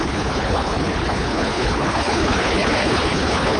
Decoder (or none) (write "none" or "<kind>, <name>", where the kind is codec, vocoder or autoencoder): codec, HILCodec